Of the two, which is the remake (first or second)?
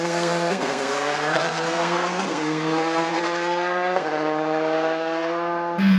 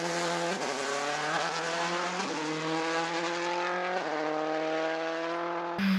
first